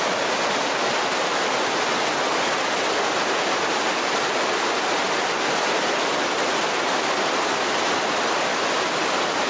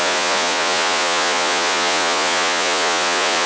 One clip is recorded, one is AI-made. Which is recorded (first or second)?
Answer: first